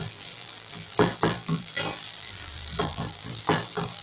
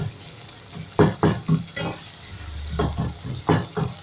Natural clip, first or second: second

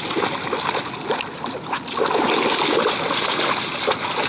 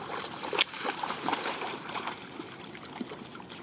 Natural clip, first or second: first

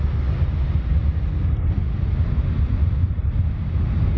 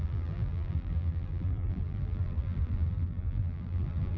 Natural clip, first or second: first